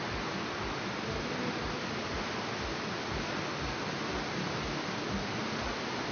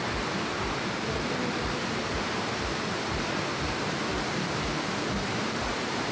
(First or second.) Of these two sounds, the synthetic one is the second